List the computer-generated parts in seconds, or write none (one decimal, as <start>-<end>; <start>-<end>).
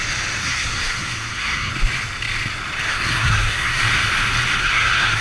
0.4-1.7; 2.9-3.8; 4.6-5.2